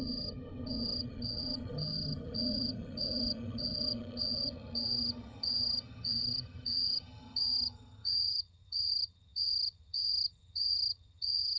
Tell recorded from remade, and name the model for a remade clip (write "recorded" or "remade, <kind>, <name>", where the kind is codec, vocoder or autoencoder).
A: remade, vocoder, HiFi-GAN